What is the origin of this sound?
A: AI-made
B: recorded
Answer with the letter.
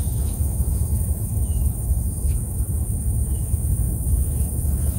A